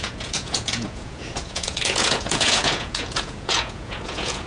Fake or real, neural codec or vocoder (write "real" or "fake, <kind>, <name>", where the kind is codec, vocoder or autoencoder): fake, vocoder, Vocos